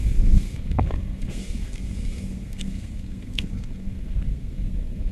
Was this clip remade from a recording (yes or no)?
yes